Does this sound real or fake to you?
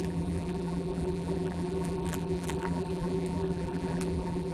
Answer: fake